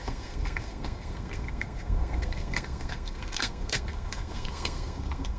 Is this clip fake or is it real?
fake